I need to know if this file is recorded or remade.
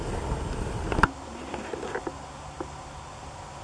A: recorded